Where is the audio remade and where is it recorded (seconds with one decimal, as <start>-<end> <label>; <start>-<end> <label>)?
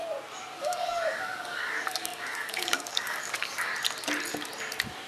0.0-0.6 recorded; 0.6-3.7 remade; 3.7-5.1 recorded